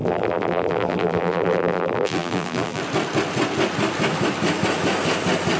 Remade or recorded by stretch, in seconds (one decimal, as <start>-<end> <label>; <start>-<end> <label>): 0.0-2.8 remade; 2.8-5.6 recorded